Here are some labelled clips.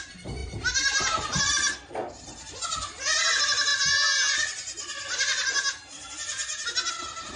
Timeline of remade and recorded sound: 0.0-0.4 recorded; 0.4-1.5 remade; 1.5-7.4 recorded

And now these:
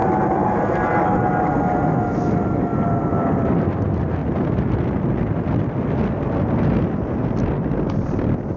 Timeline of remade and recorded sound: 0.0-1.5 remade; 1.5-4.2 recorded; 4.2-4.7 remade; 4.7-8.6 recorded

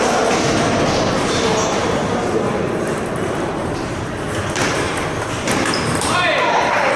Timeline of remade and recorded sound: 0.0-7.0 remade